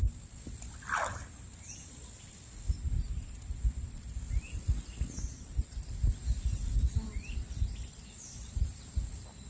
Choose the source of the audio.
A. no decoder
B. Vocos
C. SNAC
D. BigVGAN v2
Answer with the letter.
A